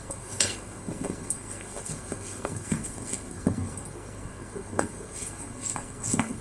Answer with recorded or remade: remade